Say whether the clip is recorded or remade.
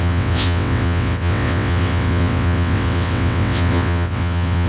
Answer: remade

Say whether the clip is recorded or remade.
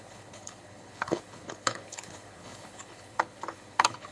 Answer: remade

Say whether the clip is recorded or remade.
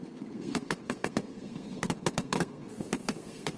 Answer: remade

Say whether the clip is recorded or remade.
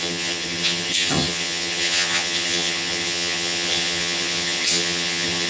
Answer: remade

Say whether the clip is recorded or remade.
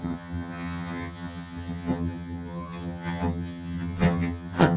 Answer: remade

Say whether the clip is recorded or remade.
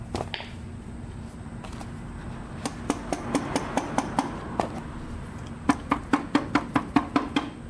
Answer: recorded